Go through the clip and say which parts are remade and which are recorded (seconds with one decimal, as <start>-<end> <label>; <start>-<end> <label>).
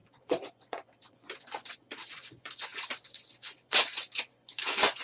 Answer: 0.0-5.0 remade